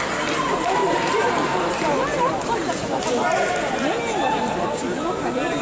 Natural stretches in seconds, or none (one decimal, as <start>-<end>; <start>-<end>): 0.0-0.8; 1.7-2.1; 3.5-5.6